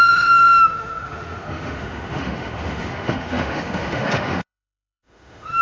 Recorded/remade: remade